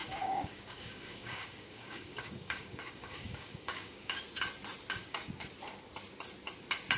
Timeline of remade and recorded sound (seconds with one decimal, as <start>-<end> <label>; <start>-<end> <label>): 0.0-4.2 remade; 4.2-5.0 recorded; 5.0-5.5 remade; 5.5-7.0 recorded

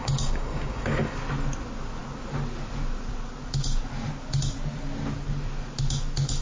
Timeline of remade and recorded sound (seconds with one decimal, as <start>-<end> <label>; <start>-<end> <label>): 0.0-1.2 remade; 1.2-6.4 recorded

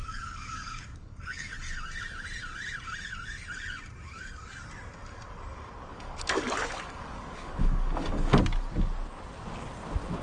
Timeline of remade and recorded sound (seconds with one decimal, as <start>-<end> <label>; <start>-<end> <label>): 0.0-1.5 remade; 1.5-5.9 recorded; 5.9-8.4 remade; 8.4-10.2 recorded

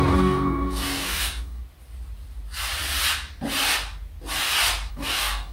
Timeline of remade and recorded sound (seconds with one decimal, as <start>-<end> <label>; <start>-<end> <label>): 0.0-1.6 remade; 1.6-4.9 recorded; 4.9-5.5 remade

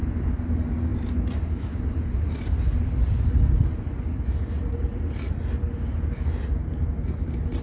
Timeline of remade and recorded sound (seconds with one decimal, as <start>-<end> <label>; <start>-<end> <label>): 0.0-7.6 recorded

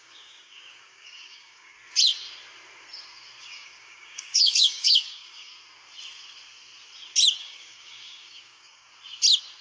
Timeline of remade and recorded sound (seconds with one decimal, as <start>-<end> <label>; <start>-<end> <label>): 0.0-1.7 remade; 1.7-3.4 recorded; 3.4-5.5 remade; 5.5-7.4 recorded; 7.4-8.8 remade; 8.8-9.6 recorded

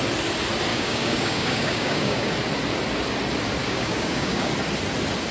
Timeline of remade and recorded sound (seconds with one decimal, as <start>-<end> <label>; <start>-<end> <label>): 0.0-0.7 recorded; 0.7-2.3 remade; 2.3-3.6 recorded; 3.6-4.5 remade; 4.5-5.3 recorded